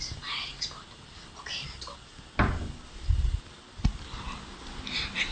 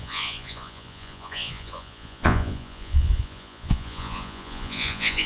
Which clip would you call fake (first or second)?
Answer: second